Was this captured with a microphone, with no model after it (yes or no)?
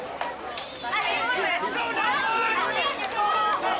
yes